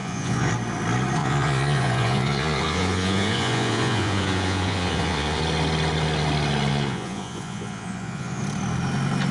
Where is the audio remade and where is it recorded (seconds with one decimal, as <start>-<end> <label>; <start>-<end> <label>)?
0.0-0.5 remade; 0.5-1.2 recorded; 1.2-5.4 remade; 5.4-6.7 recorded; 6.7-8.4 remade; 8.4-9.3 recorded